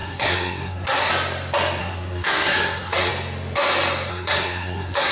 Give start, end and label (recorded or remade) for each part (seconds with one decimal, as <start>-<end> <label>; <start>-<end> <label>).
0.0-1.1 remade; 1.1-1.8 recorded; 1.8-3.1 remade; 3.1-4.1 recorded; 4.1-5.1 remade